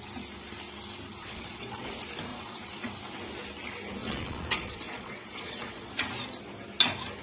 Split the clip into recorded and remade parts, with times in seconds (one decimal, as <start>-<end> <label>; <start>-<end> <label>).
0.0-1.1 recorded; 1.1-1.9 remade; 1.9-2.3 recorded; 2.3-2.9 remade; 2.9-4.0 recorded; 4.0-5.9 remade; 5.9-7.2 recorded